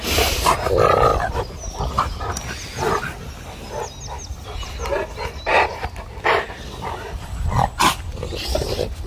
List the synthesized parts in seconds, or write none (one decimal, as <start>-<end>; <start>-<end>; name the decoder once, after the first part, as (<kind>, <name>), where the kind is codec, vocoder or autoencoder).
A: 1.1-1.8 (vocoder, BigVGAN v2)